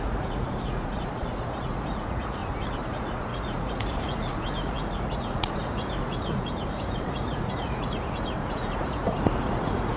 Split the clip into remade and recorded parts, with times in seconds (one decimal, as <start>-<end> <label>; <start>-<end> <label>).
0.0-2.4 remade; 2.4-2.9 recorded; 2.9-10.0 remade